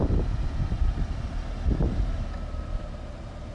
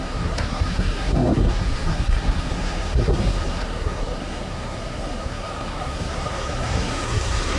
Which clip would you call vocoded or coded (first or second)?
second